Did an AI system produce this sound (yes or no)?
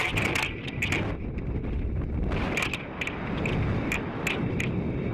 no